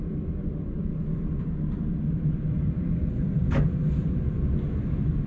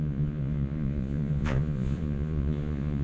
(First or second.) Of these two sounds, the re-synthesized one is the second